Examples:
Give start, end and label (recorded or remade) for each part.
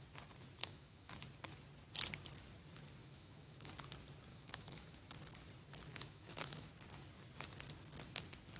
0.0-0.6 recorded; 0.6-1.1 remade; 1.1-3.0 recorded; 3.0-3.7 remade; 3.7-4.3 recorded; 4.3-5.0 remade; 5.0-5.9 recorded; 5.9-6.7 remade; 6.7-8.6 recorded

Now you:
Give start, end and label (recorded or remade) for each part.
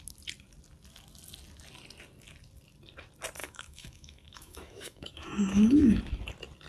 0.0-3.4 recorded; 3.4-6.0 remade; 6.0-6.7 recorded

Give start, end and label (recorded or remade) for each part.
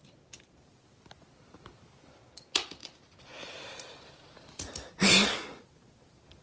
0.0-6.4 recorded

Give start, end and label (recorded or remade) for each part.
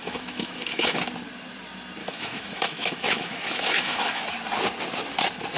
0.0-1.0 remade; 1.0-2.0 recorded; 2.0-4.2 remade; 4.2-5.6 recorded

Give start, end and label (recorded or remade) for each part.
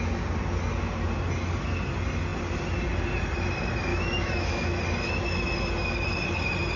0.0-3.9 recorded; 3.9-4.8 remade; 4.8-6.8 recorded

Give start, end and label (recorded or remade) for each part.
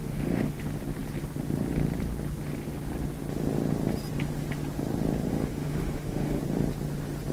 0.0-0.6 remade; 0.6-5.3 recorded; 5.3-6.4 remade; 6.4-7.3 recorded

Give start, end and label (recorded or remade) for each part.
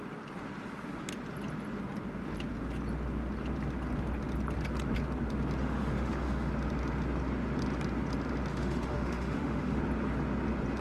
0.0-5.6 recorded; 5.6-6.5 remade; 6.5-8.5 recorded; 8.5-9.8 remade; 9.8-10.8 recorded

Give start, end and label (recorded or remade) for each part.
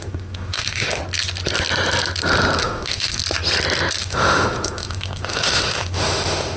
0.0-1.0 remade; 1.0-2.6 recorded; 2.6-3.2 remade; 3.2-4.0 recorded; 4.0-6.6 remade